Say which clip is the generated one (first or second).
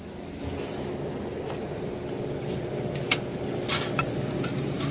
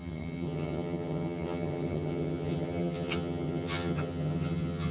second